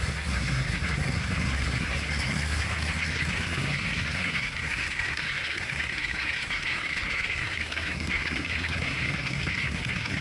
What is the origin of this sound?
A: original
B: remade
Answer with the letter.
B